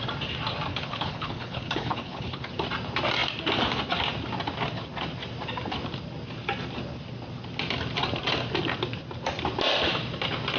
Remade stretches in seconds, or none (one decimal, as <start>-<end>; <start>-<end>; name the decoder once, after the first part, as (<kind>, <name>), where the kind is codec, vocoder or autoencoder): 0.7-2.5 (codec, HILCodec)